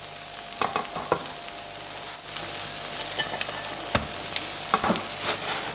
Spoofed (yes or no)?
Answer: no